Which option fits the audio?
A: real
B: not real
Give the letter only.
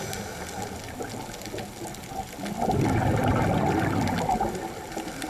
A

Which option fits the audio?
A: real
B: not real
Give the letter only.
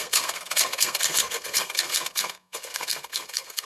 B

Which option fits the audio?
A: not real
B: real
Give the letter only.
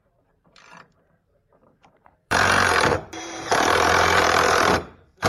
A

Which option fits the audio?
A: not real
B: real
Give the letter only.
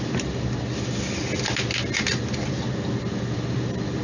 B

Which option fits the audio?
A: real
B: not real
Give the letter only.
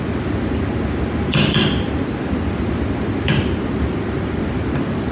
A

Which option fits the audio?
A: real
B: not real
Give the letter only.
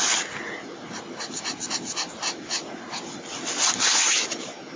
A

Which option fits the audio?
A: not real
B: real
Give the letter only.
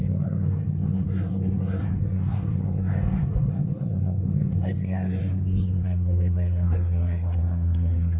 A